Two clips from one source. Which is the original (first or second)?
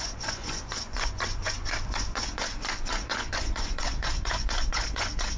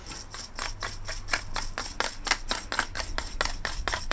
second